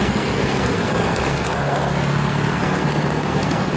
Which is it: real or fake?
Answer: fake